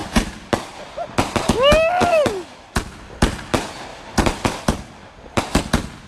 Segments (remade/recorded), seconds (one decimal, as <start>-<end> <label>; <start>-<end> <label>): 0.0-2.0 recorded; 2.0-2.8 remade; 2.8-3.9 recorded; 3.9-5.4 remade; 5.4-6.1 recorded